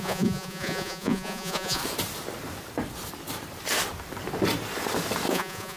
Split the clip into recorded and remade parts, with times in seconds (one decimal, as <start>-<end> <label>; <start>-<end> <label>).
0.0-1.8 remade; 1.8-5.3 recorded; 5.3-5.8 remade